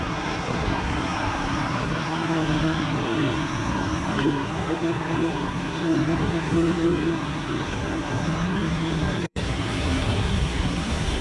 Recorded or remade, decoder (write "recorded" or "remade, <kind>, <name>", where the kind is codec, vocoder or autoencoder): remade, codec, SNAC